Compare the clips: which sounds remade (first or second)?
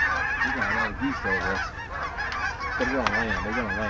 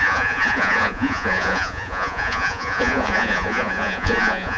second